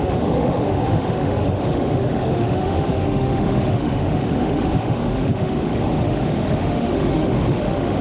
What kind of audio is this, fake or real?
fake